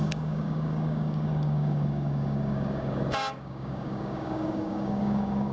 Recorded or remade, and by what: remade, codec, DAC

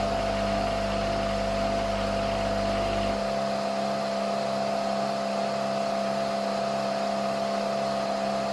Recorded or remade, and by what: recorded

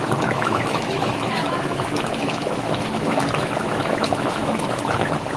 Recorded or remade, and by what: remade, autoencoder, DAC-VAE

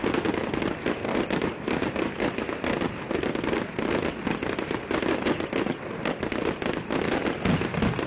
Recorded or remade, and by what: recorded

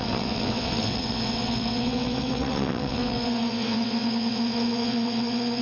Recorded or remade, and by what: remade, vocoder, WaveNeXt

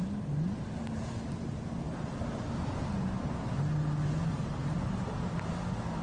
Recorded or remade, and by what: recorded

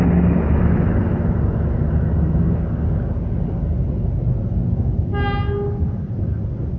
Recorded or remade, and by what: recorded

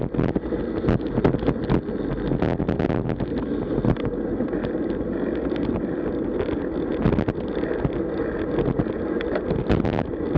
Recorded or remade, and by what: recorded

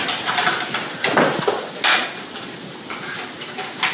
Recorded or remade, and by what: recorded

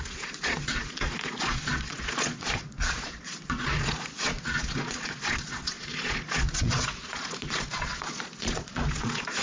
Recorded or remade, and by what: remade, vocoder, Vocos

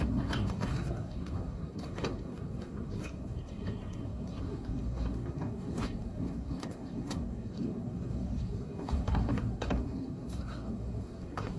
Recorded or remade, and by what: remade, codec, SNAC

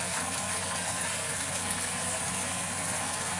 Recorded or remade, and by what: remade, codec, SNAC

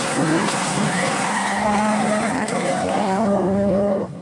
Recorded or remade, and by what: remade, codec, SNAC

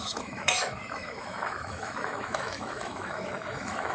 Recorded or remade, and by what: remade, autoencoder, DAC-VAE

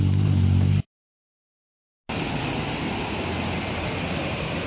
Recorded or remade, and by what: recorded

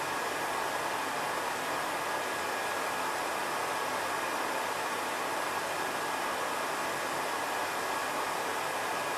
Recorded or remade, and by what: recorded